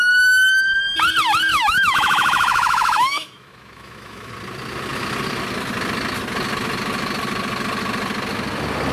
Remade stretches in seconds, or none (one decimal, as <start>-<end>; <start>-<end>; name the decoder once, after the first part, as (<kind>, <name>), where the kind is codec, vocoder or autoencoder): 1.5-4.3 (autoencoder, DAC-VAE)